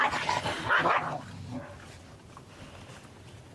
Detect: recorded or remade recorded